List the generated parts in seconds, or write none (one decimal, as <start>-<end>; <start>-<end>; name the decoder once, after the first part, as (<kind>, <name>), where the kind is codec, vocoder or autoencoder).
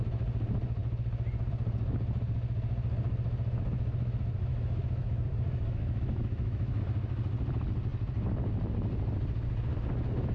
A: 4.5-6.8 (autoencoder, DAC-VAE)